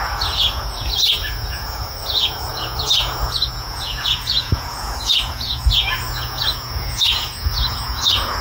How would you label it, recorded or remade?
remade